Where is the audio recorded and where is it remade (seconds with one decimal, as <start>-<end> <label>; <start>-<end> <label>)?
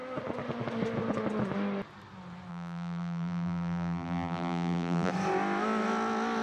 0.0-2.5 recorded; 2.5-5.1 remade; 5.1-6.4 recorded